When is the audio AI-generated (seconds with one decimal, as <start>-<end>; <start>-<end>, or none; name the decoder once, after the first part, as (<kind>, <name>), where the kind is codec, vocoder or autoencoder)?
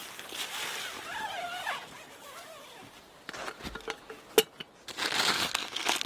5.3-6.1 (codec, SNAC)